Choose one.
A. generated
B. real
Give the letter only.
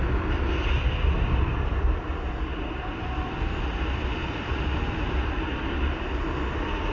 B